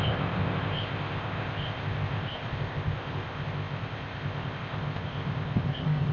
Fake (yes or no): yes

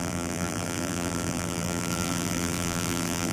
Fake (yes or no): yes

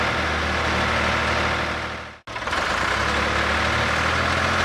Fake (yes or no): no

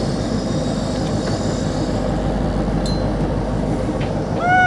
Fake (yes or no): no